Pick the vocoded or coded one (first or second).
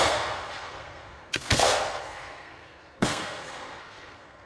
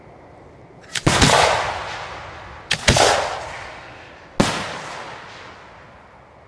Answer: first